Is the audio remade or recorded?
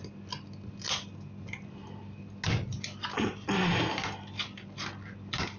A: recorded